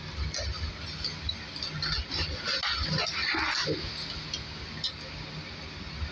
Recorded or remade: recorded